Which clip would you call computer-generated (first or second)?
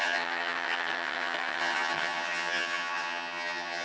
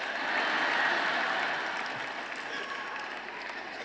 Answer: first